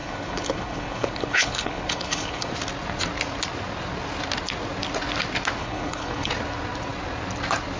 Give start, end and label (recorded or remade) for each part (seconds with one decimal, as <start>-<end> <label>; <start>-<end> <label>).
0.0-2.5 remade; 2.5-5.6 recorded; 5.6-6.3 remade; 6.3-7.8 recorded